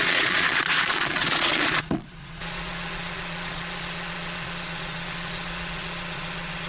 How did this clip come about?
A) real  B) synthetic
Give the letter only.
B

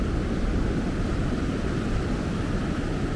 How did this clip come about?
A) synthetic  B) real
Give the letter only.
B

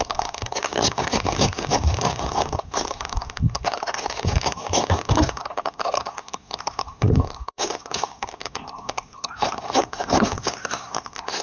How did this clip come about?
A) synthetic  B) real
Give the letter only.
A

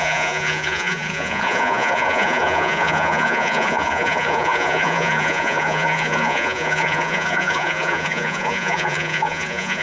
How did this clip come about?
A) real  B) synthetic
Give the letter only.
B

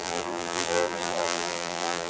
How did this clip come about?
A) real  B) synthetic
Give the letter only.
B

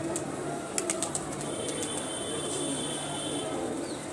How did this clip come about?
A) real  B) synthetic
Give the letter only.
A